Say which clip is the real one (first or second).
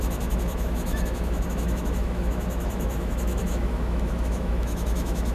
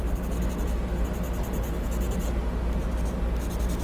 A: second